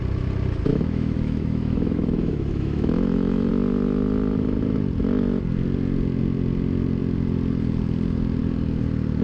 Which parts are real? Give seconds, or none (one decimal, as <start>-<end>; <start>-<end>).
0.0-0.7; 3.5-9.2

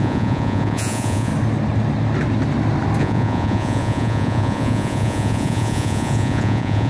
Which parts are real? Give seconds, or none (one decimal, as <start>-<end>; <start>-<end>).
1.3-3.0

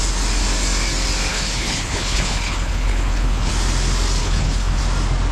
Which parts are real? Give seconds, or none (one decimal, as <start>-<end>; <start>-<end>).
0.0-1.3; 3.5-4.2; 4.8-5.3

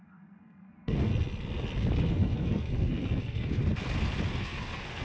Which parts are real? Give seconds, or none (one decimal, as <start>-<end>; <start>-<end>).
1.1-2.1; 3.6-4.4